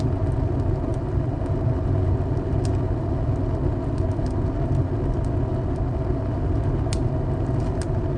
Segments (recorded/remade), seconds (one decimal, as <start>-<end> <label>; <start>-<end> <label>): 0.0-8.2 recorded